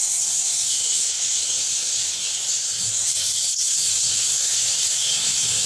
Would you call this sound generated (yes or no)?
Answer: yes